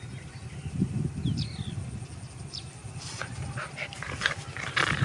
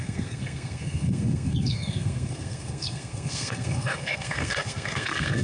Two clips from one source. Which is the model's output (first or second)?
second